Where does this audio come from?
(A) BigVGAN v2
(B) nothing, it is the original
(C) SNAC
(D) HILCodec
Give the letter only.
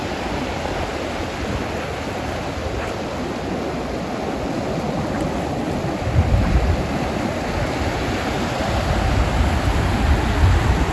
B